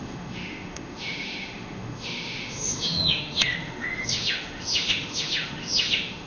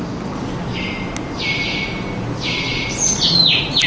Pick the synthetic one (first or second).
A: first